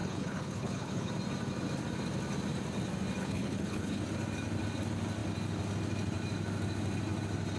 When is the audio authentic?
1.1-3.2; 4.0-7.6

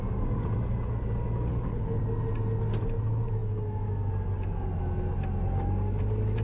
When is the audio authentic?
0.0-1.5; 2.0-6.4

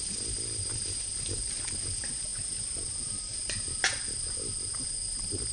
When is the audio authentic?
0.0-5.5